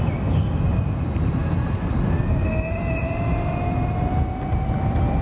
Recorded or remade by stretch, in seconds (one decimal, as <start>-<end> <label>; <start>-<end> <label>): 0.0-5.2 recorded

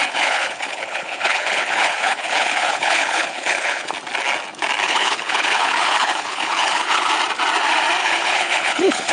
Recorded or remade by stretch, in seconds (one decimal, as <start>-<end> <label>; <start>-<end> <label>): 0.0-3.9 remade; 3.9-4.8 recorded; 4.8-7.1 remade; 7.1-8.0 recorded; 8.0-9.1 remade